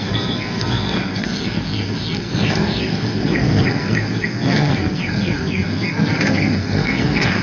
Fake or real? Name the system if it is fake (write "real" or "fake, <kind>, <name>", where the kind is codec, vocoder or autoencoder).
fake, codec, SNAC